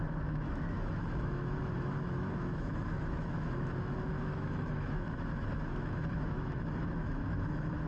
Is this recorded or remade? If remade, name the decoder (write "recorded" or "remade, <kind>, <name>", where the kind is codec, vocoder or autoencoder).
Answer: remade, autoencoder, DAC-VAE